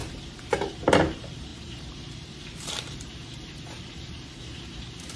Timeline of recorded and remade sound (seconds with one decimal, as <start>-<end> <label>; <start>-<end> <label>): 0.0-5.2 remade